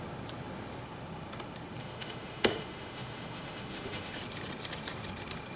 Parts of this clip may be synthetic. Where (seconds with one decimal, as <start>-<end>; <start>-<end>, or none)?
1.8-4.2